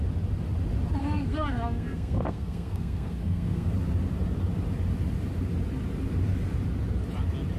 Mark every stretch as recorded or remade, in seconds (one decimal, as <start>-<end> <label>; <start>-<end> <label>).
0.0-1.0 recorded; 1.0-3.7 remade; 3.7-7.6 recorded